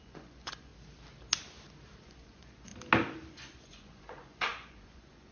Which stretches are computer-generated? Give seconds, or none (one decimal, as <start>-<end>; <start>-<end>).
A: 0.0-0.7; 2.0-2.7; 3.3-5.3